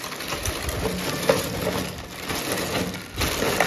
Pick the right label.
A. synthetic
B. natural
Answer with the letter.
B